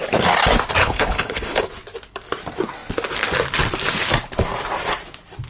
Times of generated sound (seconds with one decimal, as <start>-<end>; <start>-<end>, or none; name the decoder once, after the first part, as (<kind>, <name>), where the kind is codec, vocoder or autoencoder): 0.8-1.6 (codec, HILCodec)